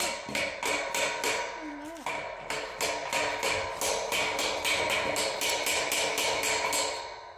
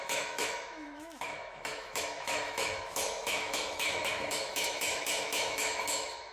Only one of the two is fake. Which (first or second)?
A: second